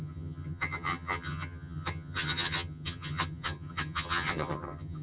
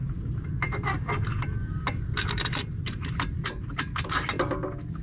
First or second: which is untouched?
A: second